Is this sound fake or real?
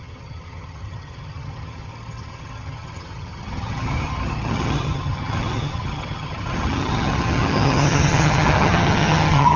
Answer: fake